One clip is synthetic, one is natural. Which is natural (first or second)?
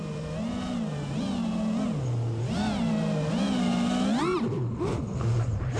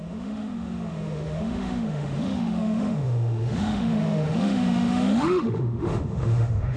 first